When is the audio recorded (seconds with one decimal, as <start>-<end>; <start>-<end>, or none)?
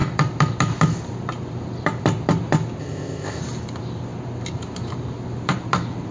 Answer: 0.0-2.8; 3.4-6.1